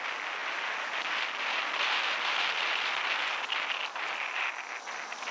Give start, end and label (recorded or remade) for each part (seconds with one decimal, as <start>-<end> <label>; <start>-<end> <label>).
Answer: 0.0-5.3 recorded